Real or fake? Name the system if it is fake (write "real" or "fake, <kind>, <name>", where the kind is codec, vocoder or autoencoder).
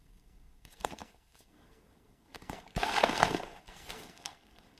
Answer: fake, codec, SNAC